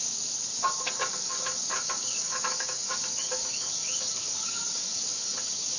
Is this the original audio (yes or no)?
no